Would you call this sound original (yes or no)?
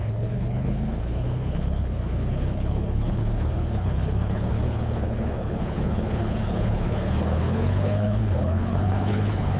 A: no